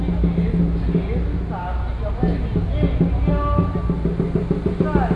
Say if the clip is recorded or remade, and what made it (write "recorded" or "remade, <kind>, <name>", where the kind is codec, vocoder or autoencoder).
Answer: recorded